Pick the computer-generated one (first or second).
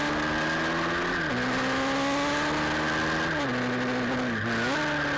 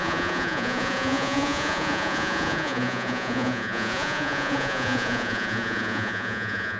second